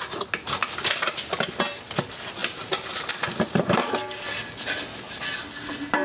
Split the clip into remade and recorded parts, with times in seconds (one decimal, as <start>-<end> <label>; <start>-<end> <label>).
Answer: 0.0-6.0 recorded